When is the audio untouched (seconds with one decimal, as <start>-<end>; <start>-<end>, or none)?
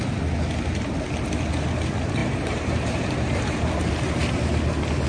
0.0-2.2; 3.7-5.1